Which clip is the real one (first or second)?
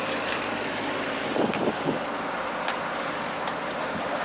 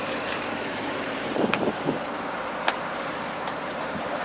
first